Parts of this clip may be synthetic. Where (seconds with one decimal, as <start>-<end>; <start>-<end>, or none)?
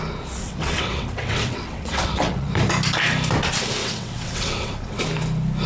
0.4-2.5; 3.8-5.0